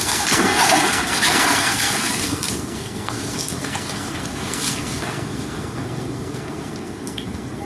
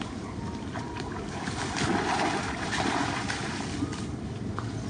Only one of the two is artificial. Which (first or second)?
first